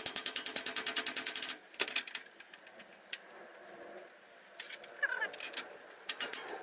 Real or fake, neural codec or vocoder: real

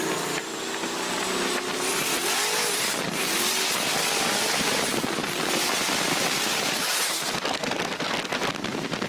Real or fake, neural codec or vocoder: real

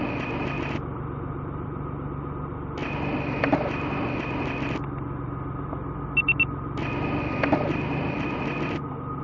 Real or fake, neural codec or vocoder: real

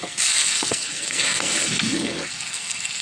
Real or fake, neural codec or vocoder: fake, codec, SNAC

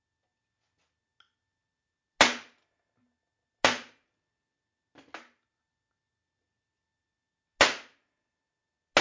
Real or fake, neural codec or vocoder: real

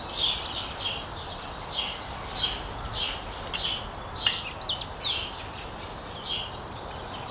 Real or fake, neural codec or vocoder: real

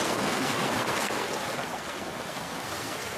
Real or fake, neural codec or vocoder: fake, codec, SNAC